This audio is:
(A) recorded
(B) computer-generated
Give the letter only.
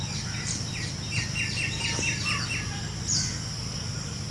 A